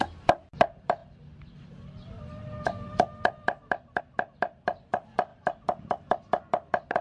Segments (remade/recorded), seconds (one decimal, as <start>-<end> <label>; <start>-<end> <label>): 0.0-7.0 recorded